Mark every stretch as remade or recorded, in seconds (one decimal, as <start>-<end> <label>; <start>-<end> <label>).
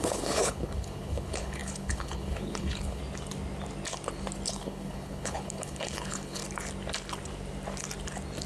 0.0-3.0 remade; 3.0-4.5 recorded; 4.5-6.4 remade; 6.4-8.5 recorded